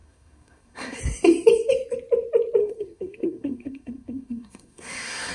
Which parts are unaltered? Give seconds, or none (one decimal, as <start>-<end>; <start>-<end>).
1.0-2.6